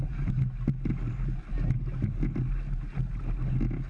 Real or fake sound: real